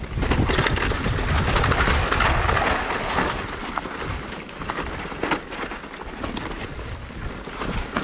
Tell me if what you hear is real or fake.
real